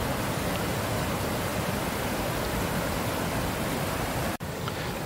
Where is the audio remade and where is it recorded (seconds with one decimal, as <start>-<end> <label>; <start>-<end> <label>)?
0.0-5.1 remade